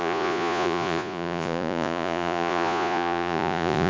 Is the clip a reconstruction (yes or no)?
yes